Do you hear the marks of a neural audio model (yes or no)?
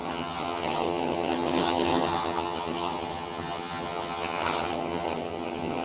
yes